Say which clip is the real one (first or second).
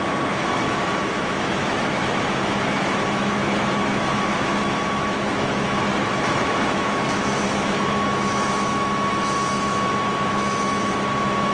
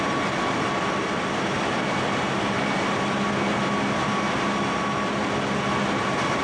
second